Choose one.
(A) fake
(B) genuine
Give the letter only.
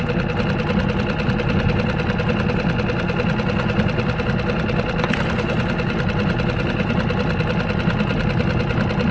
B